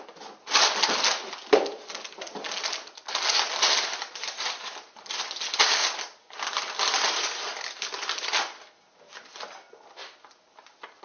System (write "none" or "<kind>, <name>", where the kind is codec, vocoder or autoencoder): none